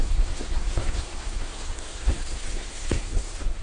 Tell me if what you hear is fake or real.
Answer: fake